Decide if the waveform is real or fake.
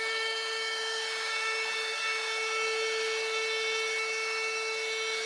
fake